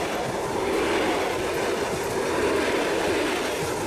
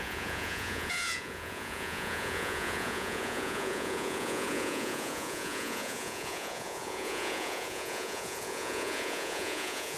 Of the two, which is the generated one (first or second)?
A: second